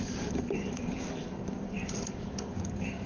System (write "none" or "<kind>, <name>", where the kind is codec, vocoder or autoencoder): codec, DAC